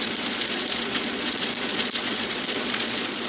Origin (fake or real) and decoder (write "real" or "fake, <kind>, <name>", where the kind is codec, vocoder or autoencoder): fake, vocoder, Vocos